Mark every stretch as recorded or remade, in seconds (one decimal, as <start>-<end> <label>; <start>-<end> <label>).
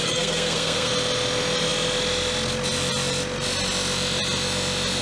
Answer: 0.0-0.9 remade; 0.9-5.0 recorded